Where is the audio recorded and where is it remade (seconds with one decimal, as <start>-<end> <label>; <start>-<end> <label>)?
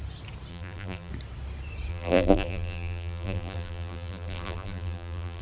0.0-0.5 recorded; 0.5-1.1 remade; 1.1-1.9 recorded; 1.9-5.4 remade